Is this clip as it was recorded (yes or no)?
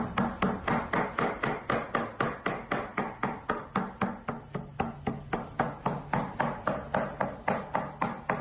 yes